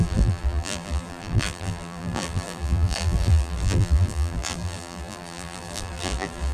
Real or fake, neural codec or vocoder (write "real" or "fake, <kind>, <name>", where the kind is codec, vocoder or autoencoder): fake, vocoder, BigVGAN v2